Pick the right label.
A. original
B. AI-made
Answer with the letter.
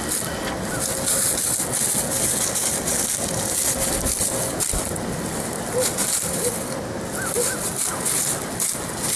A